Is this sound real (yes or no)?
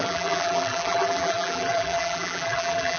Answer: no